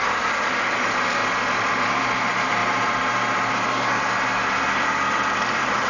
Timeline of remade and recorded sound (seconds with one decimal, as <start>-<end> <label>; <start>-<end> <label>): 0.0-1.2 remade; 1.2-1.8 recorded; 1.8-2.6 remade; 2.6-5.4 recorded; 5.4-5.9 remade